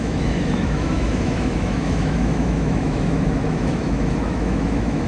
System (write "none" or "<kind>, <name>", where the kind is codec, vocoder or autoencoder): autoencoder, DAC-VAE